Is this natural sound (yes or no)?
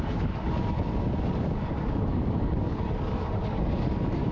no